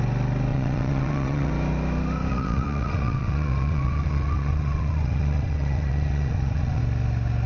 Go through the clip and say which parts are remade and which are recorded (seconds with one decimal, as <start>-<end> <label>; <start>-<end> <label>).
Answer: 0.0-0.5 recorded; 0.5-1.5 remade; 1.5-2.3 recorded; 2.3-6.8 remade; 6.8-7.5 recorded